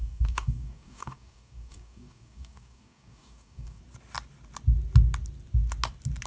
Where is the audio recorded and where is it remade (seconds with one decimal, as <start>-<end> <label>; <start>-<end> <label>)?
0.0-3.8 remade; 3.8-6.3 recorded